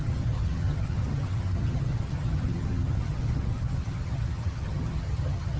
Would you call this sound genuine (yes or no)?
no